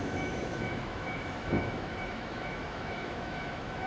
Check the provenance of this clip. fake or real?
fake